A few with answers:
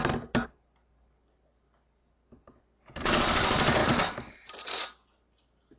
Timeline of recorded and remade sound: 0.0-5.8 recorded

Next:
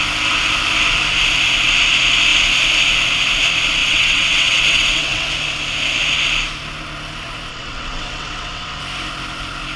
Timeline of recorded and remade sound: 0.0-3.8 recorded; 3.8-5.3 remade; 5.3-7.5 recorded; 7.5-8.8 remade; 8.8-9.8 recorded

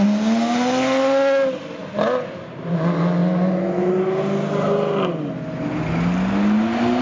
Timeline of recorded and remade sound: 0.0-7.0 recorded

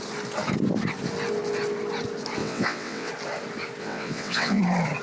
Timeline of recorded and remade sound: 0.0-2.4 recorded; 2.4-3.1 remade; 3.1-3.8 recorded; 3.8-4.6 remade; 4.6-5.0 recorded

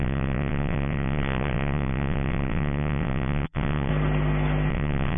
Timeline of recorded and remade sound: 0.0-3.9 remade; 3.9-4.7 recorded; 4.7-5.2 remade

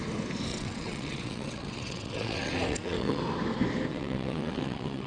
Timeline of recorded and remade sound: 0.0-0.5 recorded; 0.5-3.2 remade; 3.2-3.9 recorded; 3.9-5.1 remade